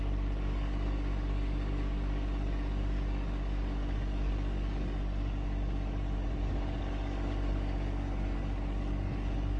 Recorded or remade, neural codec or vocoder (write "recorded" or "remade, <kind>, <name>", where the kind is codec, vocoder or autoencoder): remade, codec, DAC